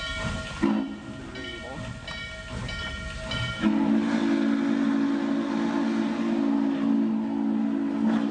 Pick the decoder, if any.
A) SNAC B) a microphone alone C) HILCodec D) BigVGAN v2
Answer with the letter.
B